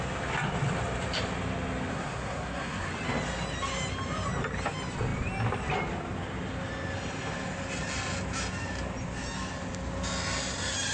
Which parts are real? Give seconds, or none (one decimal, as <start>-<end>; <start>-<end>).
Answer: 0.0-1.9; 2.9-10.9